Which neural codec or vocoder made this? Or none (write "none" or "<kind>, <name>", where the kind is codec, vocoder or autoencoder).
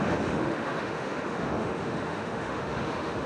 autoencoder, DAC-VAE